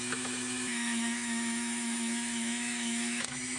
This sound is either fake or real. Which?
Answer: fake